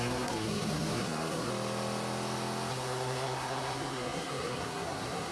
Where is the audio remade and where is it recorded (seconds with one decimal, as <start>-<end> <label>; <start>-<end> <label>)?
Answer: 0.0-1.5 remade; 1.5-2.7 recorded; 2.7-5.3 remade